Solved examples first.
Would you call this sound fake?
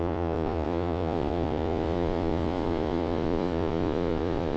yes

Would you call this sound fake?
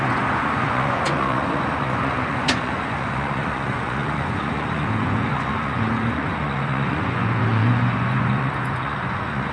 yes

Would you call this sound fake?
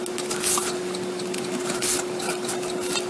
no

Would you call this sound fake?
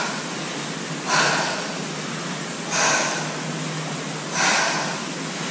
no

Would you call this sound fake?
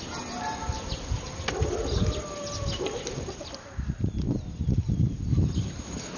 no